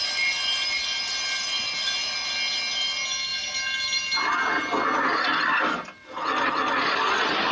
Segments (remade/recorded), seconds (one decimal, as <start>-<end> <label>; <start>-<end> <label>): 0.0-7.5 recorded